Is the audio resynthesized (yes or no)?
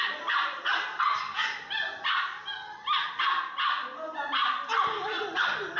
no